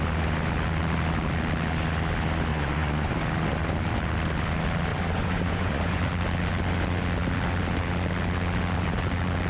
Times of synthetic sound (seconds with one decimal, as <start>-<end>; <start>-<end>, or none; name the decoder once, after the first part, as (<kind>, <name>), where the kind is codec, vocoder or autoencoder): 2.5-3.1 (vocoder, Vocos); 4.9-6.0